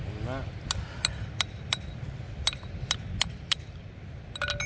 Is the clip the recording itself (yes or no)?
yes